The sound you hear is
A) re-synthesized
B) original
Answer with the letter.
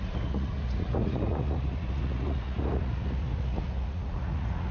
A